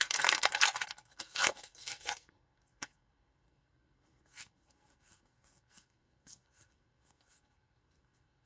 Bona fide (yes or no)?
no